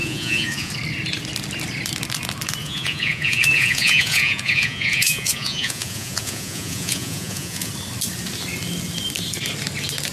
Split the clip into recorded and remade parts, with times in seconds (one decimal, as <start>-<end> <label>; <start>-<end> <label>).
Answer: 0.0-0.7 remade; 0.7-2.6 recorded; 2.6-7.7 remade; 7.7-10.1 recorded